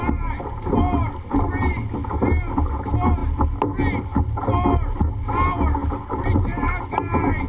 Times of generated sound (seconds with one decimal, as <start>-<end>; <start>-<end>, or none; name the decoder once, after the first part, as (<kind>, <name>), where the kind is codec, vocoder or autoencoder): none